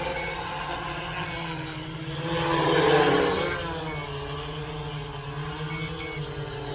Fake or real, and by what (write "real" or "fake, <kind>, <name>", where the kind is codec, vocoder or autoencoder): real